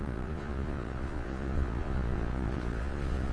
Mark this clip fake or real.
fake